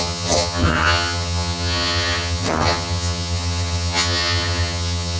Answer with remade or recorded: remade